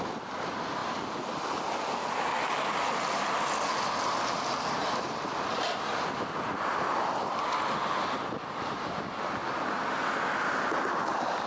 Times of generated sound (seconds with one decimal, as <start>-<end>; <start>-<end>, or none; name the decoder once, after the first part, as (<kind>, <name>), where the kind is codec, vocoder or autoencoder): none